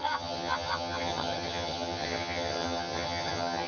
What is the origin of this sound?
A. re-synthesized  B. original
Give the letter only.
A